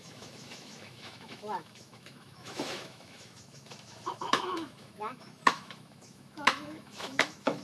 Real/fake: fake